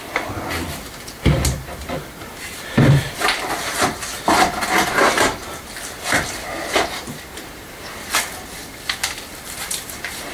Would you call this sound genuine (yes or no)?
yes